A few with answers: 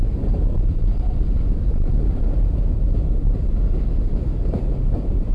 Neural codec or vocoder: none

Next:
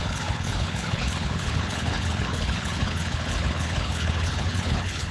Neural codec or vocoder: codec, HILCodec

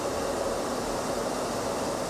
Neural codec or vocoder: none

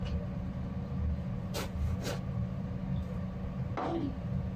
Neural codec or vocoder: none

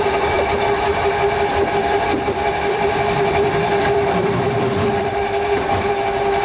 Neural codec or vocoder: vocoder, BigVGAN v2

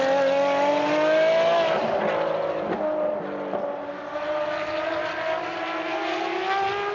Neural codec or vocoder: none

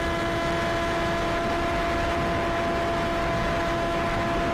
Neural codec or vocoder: none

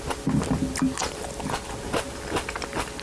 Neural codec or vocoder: none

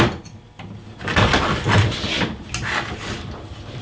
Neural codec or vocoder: none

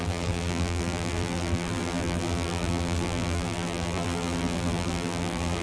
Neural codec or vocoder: vocoder, BigVGAN v2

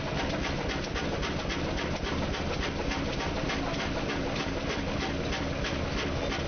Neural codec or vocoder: none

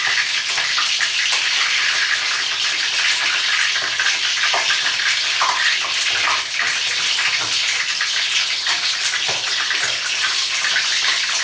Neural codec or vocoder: none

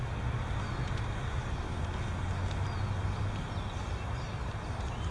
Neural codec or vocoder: none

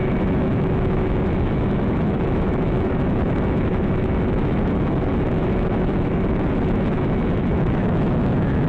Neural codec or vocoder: autoencoder, DAC-VAE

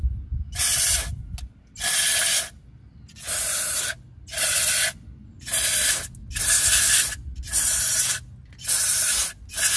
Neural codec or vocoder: none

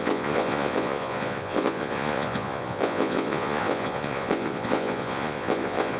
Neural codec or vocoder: vocoder, Vocos